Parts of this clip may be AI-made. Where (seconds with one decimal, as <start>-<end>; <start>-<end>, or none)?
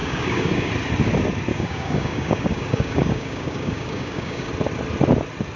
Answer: 0.0-0.7; 1.5-4.5